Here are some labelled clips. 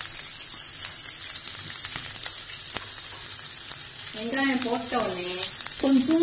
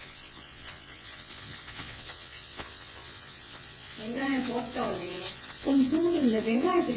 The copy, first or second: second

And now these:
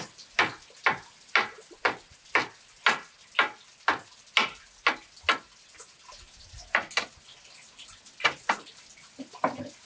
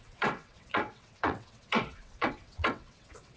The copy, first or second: second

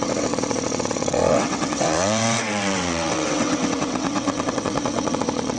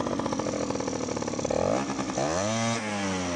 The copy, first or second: first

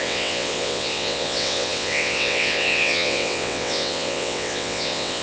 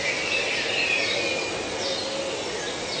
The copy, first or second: first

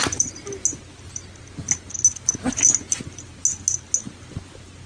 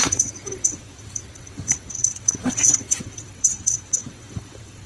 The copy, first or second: second